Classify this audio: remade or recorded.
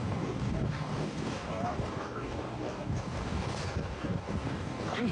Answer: remade